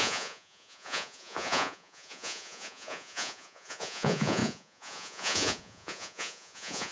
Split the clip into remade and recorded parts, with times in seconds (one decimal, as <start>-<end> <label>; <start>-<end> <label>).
0.0-6.9 remade